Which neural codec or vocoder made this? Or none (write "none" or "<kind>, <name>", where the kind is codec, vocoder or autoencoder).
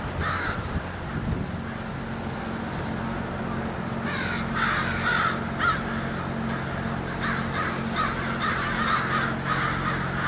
none